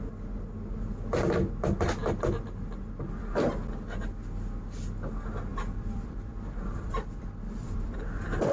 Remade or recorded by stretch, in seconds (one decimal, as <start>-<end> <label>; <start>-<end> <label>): 0.0-5.5 recorded; 5.5-8.5 remade